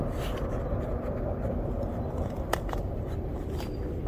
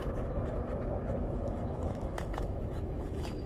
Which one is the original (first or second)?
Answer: first